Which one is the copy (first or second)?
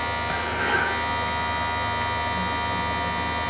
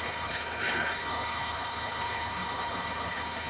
second